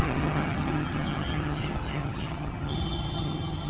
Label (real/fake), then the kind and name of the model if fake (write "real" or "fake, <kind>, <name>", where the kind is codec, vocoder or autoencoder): fake, vocoder, HiFi-GAN